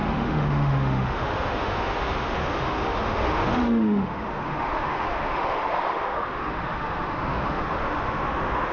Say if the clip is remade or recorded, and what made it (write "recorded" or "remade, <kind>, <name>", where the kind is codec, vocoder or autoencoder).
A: remade, autoencoder, DAC-VAE